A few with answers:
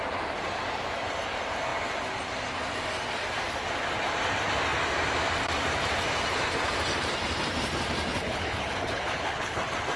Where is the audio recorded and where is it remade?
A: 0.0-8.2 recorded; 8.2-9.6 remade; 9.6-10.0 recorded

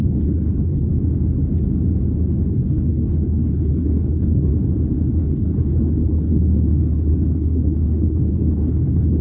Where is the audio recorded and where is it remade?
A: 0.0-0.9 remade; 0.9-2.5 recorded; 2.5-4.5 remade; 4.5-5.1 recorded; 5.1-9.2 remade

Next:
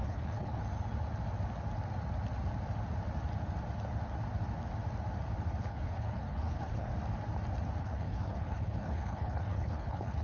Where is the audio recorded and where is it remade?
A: 0.0-0.6 remade; 0.6-5.6 recorded; 5.6-6.9 remade; 6.9-7.8 recorded; 7.8-10.2 remade

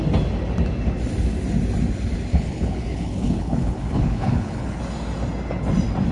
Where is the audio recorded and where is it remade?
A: 0.0-2.3 recorded; 2.3-4.8 remade; 4.8-6.1 recorded